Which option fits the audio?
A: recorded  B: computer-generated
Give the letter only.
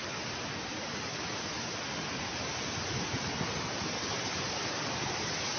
A